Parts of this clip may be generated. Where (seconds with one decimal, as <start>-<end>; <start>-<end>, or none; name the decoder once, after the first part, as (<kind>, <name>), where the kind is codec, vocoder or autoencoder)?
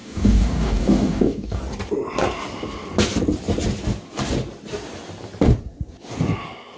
0.0-1.6 (codec, DAC)